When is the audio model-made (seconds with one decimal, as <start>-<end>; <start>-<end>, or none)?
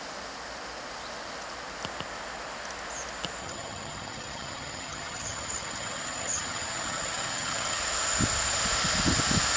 3.4-7.8